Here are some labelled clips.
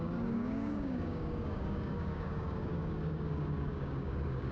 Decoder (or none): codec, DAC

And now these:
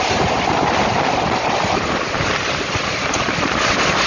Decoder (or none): none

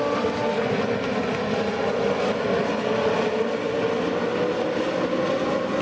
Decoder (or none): none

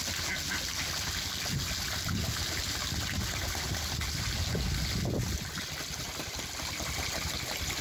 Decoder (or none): none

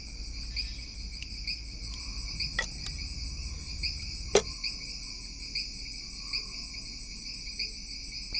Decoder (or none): none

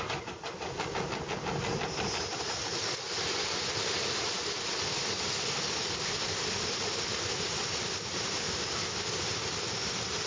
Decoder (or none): none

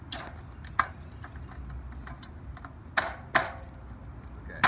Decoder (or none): none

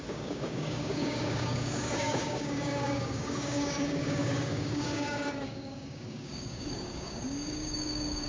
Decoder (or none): codec, DAC